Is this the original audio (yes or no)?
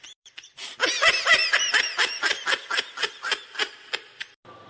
no